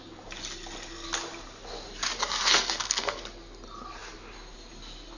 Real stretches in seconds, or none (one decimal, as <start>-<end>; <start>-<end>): 0.0-2.5; 3.2-5.2